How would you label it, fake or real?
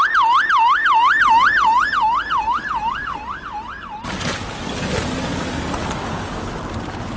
real